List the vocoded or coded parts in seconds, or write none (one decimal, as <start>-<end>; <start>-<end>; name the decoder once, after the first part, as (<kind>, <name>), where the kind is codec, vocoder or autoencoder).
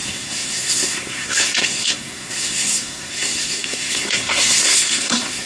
0.0-5.5 (codec, SNAC)